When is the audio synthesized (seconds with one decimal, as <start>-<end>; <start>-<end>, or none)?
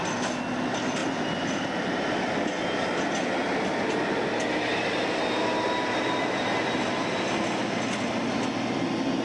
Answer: none